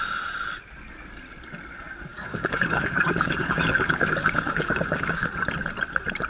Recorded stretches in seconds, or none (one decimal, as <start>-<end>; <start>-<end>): 0.0-2.1; 5.3-6.3